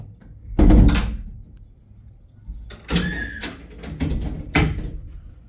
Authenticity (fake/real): real